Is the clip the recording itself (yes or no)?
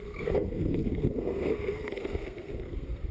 no